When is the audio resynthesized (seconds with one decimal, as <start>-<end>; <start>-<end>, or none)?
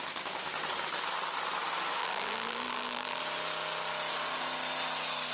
2.0-3.2